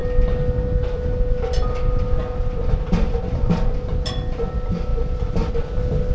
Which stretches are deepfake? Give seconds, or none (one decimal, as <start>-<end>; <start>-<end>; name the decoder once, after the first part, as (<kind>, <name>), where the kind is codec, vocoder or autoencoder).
none